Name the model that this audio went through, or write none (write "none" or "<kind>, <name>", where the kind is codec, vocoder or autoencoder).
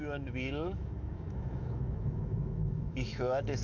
autoencoder, DAC-VAE